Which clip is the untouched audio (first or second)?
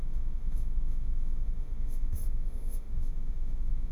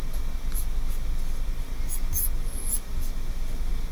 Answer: second